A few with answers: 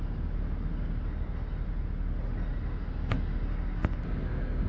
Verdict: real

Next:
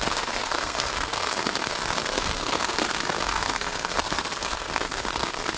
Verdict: fake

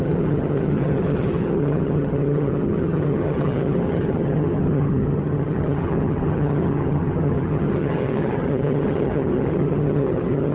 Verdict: fake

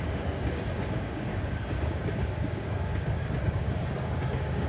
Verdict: fake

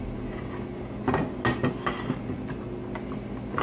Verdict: real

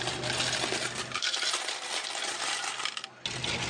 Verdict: real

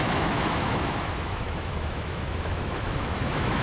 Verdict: fake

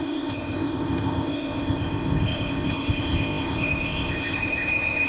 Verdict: fake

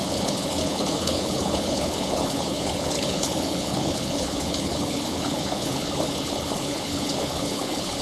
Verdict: fake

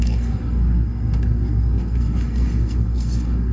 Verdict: fake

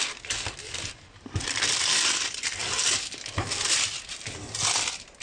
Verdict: real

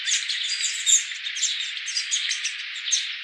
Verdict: real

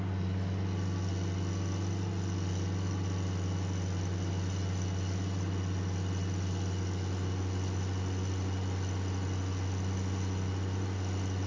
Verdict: real